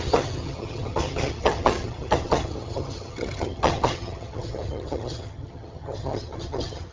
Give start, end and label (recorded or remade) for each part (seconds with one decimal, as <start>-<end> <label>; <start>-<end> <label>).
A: 0.0-6.9 remade